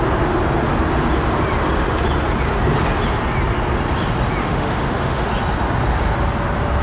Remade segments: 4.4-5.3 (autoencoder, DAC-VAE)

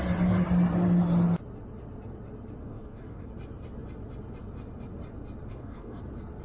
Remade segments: 2.6-3.3 (codec, DAC); 5.5-6.0

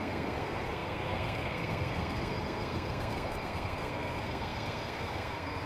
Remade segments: 0.0-5.7 (codec, SNAC)

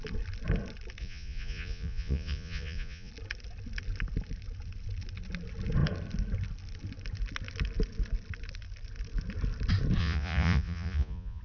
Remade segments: 1.0-3.1 (vocoder, Vocos); 10.0-11.4

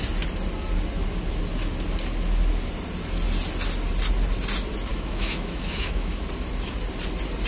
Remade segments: 4.9-6.2 (autoencoder, DAC-VAE)

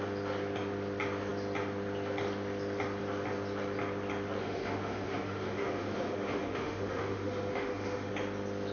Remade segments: 4.4-8.1 (autoencoder, DAC-VAE)